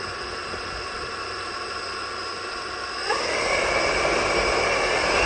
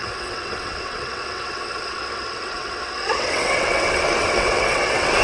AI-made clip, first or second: second